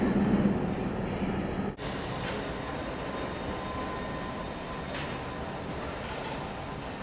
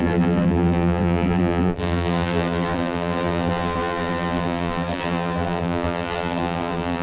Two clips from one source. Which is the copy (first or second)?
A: second